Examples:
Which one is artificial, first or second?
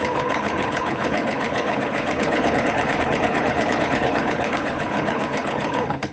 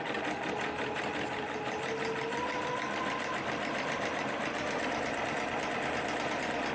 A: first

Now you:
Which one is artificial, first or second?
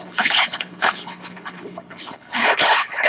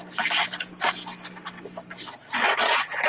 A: first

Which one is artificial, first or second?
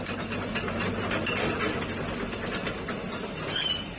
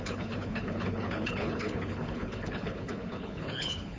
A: second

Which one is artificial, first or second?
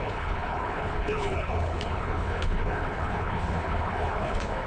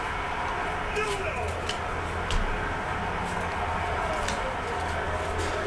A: first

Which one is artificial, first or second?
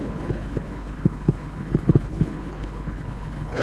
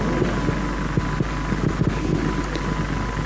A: first